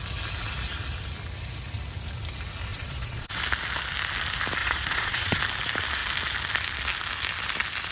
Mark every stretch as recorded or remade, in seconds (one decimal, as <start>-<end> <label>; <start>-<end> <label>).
0.0-2.7 recorded; 2.7-3.4 remade; 3.4-4.6 recorded; 4.6-5.4 remade; 5.4-7.9 recorded